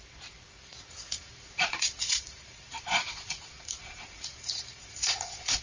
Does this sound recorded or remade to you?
remade